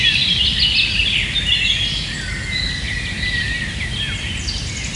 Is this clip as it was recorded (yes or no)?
yes